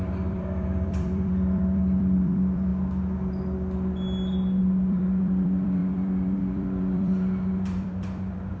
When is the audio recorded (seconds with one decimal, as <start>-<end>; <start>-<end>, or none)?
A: 2.7-4.6